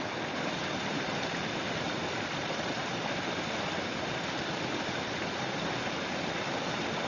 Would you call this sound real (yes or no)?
yes